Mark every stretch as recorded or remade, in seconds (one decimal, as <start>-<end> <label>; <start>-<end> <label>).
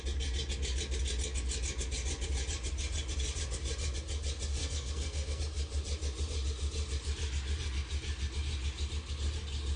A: 0.0-4.6 recorded; 4.6-5.4 remade; 5.4-9.8 recorded